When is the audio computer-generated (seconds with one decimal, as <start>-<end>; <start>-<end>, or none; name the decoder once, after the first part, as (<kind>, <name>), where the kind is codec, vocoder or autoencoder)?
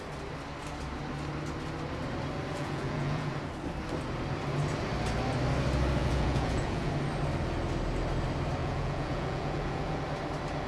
2.5-3.3 (vocoder, Vocos); 6.0-6.9; 8.6-10.0